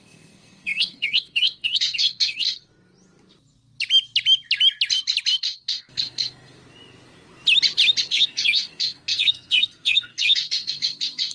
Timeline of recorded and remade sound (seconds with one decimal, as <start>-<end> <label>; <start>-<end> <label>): 0.0-2.7 remade; 2.7-5.4 recorded; 5.4-6.6 remade; 6.6-8.1 recorded; 8.1-11.3 remade